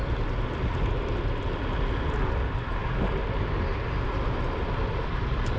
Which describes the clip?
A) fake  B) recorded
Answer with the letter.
B